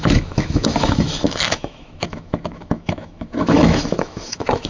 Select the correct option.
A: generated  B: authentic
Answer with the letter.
A